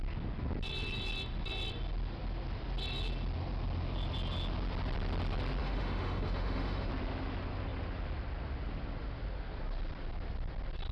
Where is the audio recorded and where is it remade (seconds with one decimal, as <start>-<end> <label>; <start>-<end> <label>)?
0.0-5.6 recorded; 5.6-6.9 remade; 6.9-10.9 recorded